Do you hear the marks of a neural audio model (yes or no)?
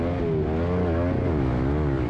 no